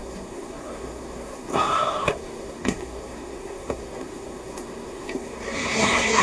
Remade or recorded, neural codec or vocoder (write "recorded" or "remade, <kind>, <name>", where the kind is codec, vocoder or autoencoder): remade, codec, SNAC